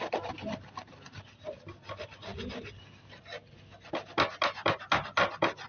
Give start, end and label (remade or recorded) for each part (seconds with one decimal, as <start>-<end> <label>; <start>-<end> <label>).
0.0-5.7 recorded